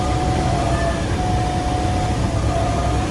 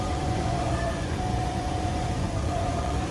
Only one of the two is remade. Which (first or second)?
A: second